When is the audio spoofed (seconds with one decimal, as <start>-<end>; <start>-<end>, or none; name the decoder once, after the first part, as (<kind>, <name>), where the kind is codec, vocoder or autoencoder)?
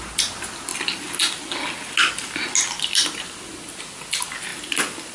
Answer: none